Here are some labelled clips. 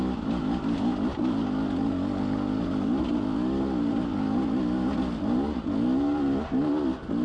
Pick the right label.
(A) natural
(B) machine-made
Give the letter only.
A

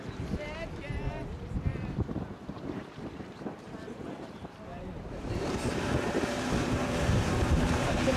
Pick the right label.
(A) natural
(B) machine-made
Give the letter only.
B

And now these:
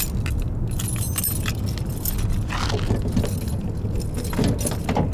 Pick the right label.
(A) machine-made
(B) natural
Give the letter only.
B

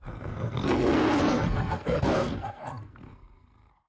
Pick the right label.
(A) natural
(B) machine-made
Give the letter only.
B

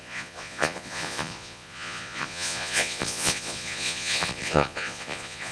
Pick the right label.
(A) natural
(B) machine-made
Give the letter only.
B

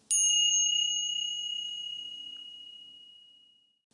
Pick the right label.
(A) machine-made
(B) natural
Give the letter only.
B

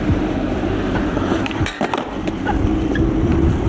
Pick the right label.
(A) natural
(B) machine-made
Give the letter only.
B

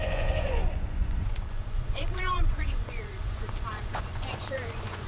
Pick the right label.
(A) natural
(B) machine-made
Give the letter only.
B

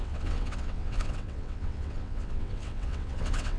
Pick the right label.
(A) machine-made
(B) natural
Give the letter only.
A